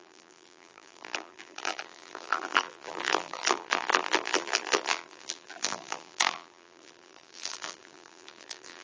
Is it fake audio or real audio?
fake